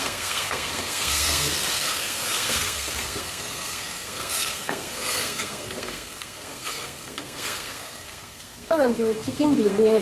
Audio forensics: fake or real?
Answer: fake